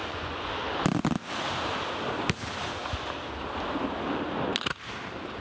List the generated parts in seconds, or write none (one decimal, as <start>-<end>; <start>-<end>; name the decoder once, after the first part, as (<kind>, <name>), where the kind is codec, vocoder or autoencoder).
0.0-0.5 (vocoder, Vocos)